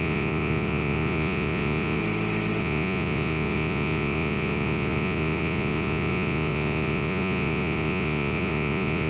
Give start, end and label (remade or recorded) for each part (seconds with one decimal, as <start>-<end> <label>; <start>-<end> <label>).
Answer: 0.0-2.0 remade; 2.0-2.6 recorded; 2.6-9.1 remade